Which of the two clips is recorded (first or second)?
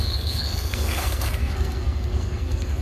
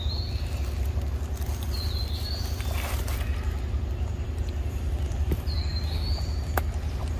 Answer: second